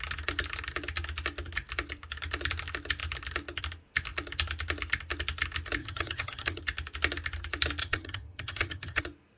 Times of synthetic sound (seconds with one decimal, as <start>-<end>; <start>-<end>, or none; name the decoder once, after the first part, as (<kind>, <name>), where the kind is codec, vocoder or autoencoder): 5.8-6.6 (vocoder, HiFi-GAN); 7.8-9.0